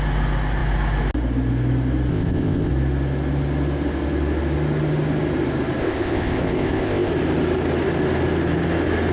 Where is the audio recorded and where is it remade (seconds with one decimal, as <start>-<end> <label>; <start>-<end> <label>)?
0.0-2.1 recorded; 2.1-2.7 remade; 2.7-5.8 recorded; 5.8-7.1 remade; 7.1-9.1 recorded